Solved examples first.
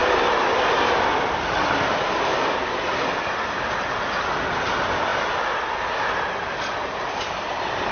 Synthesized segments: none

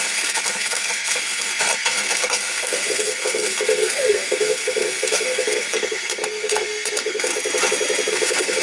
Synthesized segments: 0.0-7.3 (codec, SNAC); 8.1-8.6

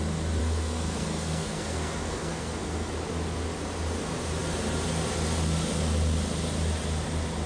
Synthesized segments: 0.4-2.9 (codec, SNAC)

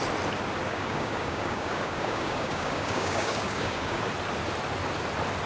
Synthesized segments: 0.7-4.0 (codec, DAC)

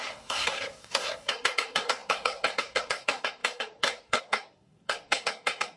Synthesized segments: 0.0-5.8 (codec, SNAC)